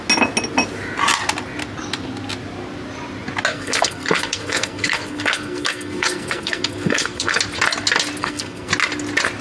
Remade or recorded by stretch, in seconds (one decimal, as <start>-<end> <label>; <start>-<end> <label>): 0.0-3.5 recorded; 3.5-7.4 remade; 7.4-8.2 recorded; 8.2-8.7 remade; 8.7-9.4 recorded